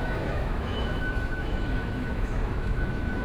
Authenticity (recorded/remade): remade